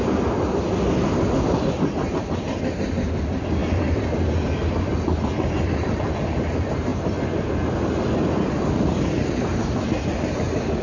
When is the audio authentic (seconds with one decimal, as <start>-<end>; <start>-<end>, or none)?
6.9-10.8